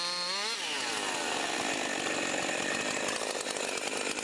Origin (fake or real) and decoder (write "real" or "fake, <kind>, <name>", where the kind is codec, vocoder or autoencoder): real